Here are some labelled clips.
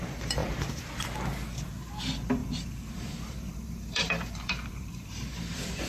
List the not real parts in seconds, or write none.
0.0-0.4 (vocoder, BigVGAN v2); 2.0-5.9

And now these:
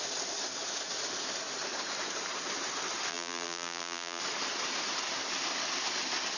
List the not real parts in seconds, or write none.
3.1-4.2 (vocoder, BigVGAN v2)

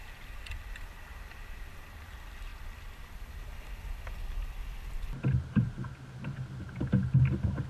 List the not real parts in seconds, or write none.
none

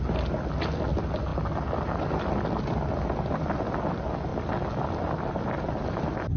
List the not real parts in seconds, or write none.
none

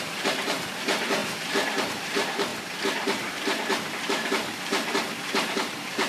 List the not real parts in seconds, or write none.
0.0-1.2 (vocoder, BigVGAN v2); 1.8-6.1

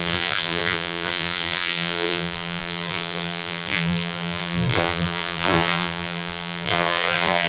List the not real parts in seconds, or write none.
0.0-7.5 (vocoder, BigVGAN v2)